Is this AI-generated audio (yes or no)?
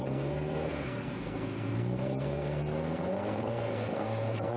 yes